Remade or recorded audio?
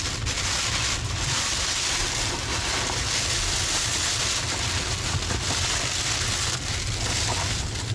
recorded